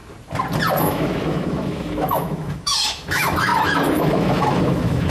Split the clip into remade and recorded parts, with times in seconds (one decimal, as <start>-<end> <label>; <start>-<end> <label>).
0.0-0.8 recorded; 0.8-5.1 remade